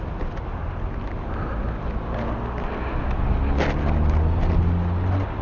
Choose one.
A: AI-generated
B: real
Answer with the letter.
B